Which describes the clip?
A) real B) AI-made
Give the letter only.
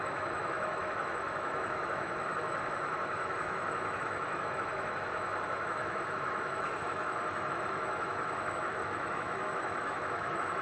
B